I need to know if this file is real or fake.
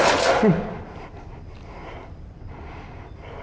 real